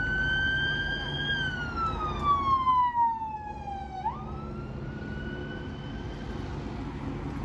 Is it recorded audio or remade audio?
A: recorded